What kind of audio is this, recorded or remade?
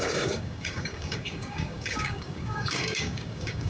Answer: remade